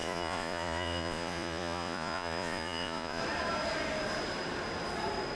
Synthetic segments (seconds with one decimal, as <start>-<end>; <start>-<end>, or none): 0.0-3.2